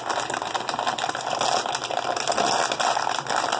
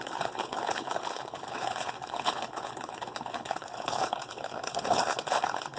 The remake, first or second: second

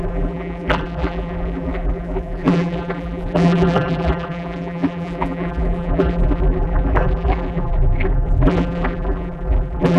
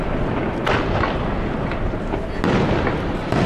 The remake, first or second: first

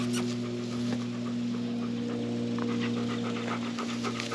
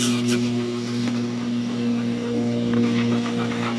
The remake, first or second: second